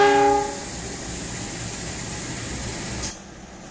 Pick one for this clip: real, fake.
real